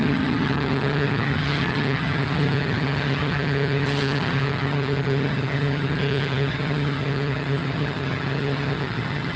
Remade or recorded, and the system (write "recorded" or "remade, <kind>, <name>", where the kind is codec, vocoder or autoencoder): remade, vocoder, HiFi-GAN